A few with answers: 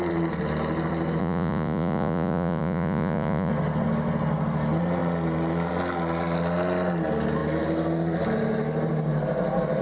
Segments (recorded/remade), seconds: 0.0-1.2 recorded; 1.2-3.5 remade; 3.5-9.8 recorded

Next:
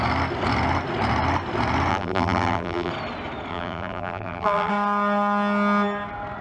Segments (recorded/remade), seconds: 0.0-1.9 recorded; 1.9-2.9 remade; 2.9-3.5 recorded; 3.5-4.7 remade; 4.7-6.4 recorded

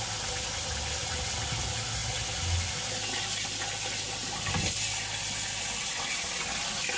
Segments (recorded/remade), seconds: 0.0-7.0 recorded

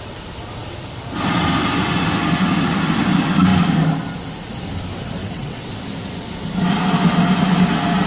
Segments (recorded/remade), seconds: 0.0-5.2 recorded; 5.2-5.7 remade; 5.7-8.1 recorded

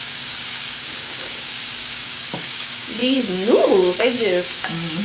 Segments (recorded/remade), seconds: 0.0-5.0 remade

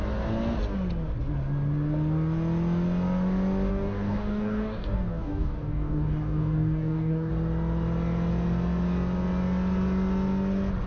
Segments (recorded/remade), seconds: 0.0-3.7 recorded; 3.7-7.3 remade; 7.3-10.9 recorded

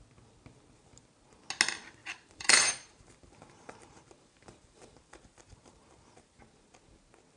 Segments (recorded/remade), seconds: 0.0-2.0 recorded; 2.0-6.4 remade; 6.4-7.4 recorded